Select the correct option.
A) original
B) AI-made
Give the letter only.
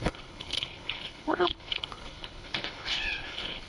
B